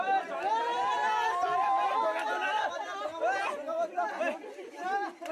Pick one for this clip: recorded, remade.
recorded